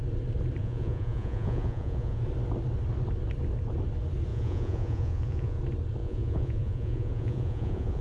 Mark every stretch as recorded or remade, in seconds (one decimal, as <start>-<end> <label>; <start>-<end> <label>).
0.0-0.6 recorded; 0.6-2.2 remade; 2.2-4.3 recorded; 4.3-5.6 remade; 5.6-6.0 recorded; 6.0-8.0 remade